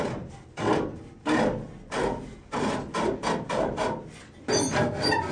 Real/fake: real